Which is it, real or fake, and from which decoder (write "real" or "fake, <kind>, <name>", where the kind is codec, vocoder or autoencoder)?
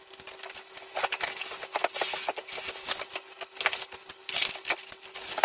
real